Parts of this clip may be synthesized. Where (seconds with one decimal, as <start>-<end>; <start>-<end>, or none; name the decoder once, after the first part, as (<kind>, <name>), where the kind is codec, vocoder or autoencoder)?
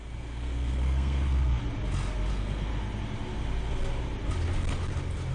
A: 0.0-1.6 (codec, SNAC); 2.3-2.7